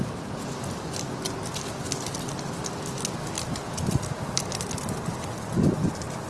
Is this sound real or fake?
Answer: real